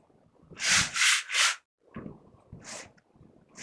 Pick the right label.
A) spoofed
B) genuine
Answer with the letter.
B